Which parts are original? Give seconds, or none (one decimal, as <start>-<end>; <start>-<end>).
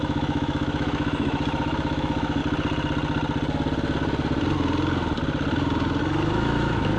2.4-6.0